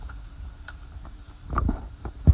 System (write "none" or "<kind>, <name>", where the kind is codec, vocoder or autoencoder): vocoder, BigVGAN v2